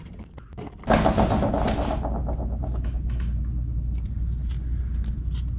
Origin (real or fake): real